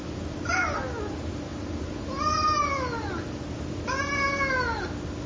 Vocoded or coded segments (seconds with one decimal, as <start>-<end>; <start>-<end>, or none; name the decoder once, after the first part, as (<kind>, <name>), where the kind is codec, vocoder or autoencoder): none

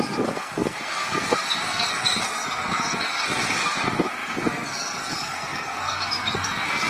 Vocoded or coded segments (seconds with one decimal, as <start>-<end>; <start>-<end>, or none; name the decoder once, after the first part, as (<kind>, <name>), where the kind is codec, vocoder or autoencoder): 0.0-6.9 (codec, SNAC)

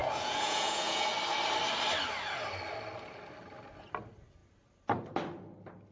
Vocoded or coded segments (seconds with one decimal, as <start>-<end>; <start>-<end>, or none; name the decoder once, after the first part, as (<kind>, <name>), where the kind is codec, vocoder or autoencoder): 0.0-1.1 (vocoder, Vocos)